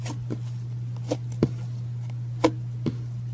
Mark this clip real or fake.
real